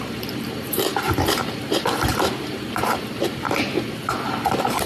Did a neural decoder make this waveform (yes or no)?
yes